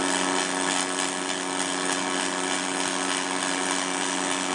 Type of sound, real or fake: real